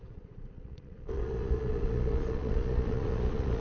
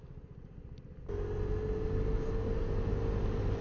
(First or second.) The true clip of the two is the second